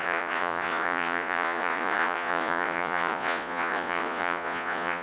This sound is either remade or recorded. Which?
remade